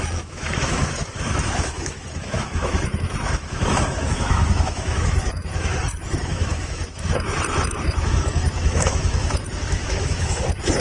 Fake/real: fake